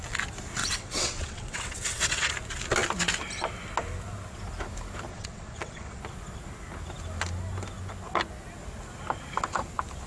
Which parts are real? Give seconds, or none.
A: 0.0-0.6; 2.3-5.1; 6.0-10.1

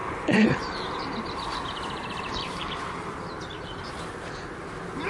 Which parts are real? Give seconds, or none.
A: 3.1-5.1

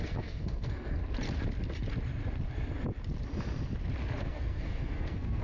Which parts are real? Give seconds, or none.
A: 1.0-4.2

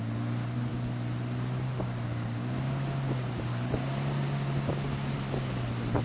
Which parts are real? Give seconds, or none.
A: 0.0-6.0